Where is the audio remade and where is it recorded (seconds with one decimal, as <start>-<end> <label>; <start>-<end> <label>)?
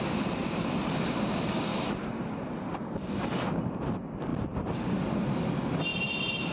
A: 0.0-0.4 recorded; 0.4-0.9 remade; 0.9-1.7 recorded; 1.7-2.2 remade; 2.2-5.9 recorded; 5.9-6.5 remade